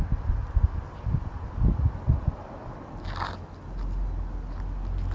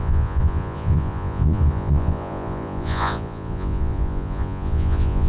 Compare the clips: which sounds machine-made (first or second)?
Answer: second